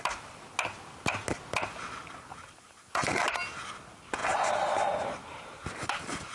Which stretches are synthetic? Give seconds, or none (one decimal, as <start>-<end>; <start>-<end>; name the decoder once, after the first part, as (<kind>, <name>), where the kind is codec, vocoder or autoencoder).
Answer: none